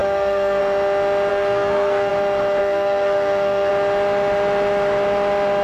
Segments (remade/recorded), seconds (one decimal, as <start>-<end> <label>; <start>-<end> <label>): 0.0-0.6 remade; 0.6-1.3 recorded; 1.3-2.1 remade; 2.1-2.6 recorded; 2.6-3.7 remade; 3.7-5.6 recorded